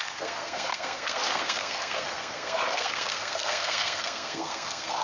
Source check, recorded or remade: remade